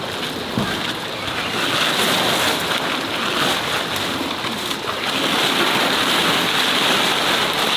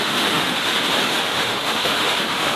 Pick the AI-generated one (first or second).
second